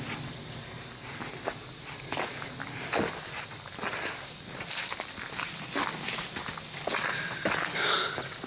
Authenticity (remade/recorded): recorded